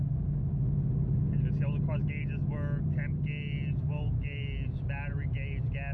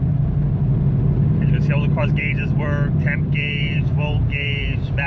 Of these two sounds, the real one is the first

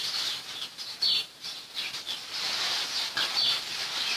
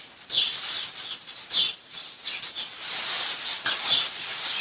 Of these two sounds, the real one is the first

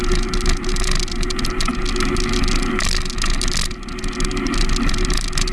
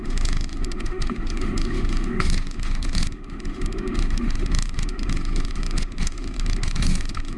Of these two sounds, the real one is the first